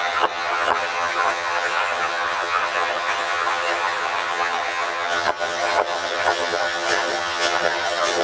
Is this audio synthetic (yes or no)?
yes